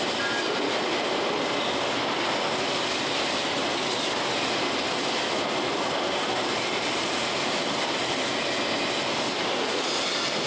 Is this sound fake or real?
real